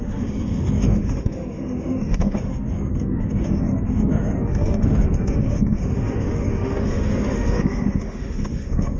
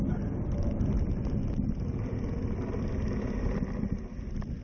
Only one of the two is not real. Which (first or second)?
first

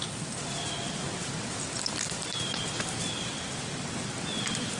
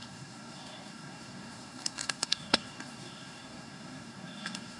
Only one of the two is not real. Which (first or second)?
second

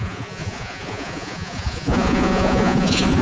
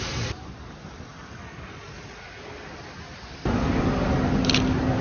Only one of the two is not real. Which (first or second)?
first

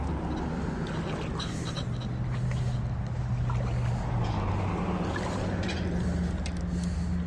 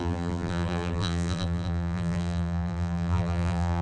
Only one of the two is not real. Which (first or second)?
second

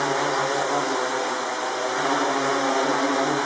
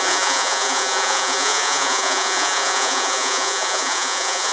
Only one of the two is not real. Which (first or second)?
second